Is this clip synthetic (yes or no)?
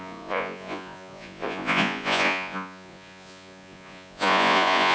yes